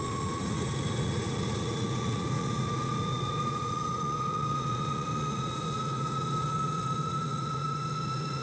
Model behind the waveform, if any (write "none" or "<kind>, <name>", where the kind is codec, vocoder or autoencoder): vocoder, Vocos